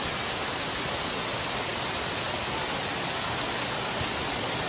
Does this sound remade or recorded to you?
recorded